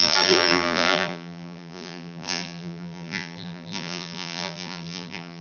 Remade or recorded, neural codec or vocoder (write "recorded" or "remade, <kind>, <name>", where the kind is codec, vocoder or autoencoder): remade, vocoder, BigVGAN v2